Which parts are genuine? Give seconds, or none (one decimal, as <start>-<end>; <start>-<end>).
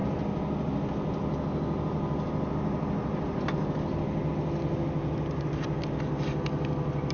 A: 0.0-7.1